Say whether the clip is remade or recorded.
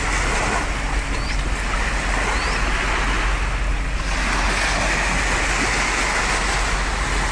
recorded